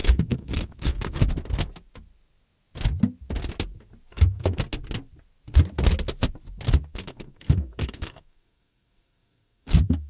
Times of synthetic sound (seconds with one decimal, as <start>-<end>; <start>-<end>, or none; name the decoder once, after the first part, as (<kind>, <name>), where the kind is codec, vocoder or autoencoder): 0.0-1.2 (codec, SNAC); 4.1-4.6; 6.9-10.1